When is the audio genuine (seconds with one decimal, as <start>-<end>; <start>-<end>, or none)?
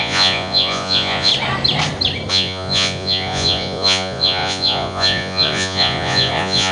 1.3-2.3